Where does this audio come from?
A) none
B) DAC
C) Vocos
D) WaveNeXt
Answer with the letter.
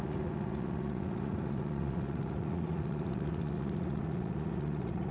C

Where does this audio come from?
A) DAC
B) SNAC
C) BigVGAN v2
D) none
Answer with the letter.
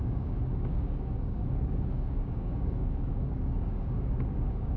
A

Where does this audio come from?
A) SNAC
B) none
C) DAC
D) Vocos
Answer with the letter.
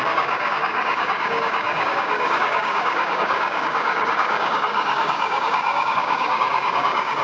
C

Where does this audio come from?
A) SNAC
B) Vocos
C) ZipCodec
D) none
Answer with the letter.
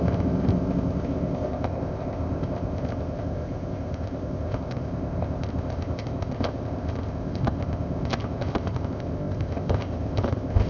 C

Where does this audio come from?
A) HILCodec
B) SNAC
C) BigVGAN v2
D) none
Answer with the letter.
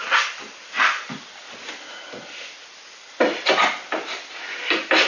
D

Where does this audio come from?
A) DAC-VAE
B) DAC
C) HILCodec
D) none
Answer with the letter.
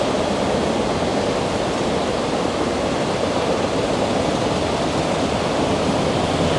D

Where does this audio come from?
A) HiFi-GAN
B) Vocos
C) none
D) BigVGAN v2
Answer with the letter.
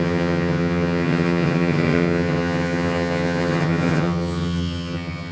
A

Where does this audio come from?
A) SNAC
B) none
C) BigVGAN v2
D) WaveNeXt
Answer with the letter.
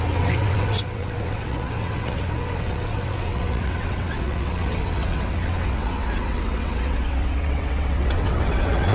D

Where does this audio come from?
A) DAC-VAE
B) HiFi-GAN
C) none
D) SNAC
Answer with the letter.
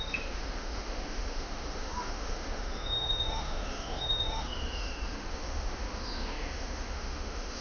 A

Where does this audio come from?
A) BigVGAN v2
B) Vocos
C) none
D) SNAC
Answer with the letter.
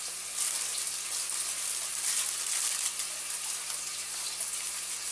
C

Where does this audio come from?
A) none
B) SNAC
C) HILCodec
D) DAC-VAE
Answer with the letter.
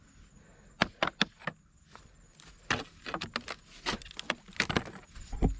A